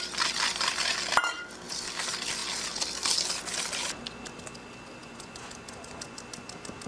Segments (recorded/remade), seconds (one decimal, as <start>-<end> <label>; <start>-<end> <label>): 0.0-5.0 recorded; 5.0-6.2 remade; 6.2-6.9 recorded